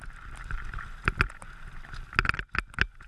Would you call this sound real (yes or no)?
yes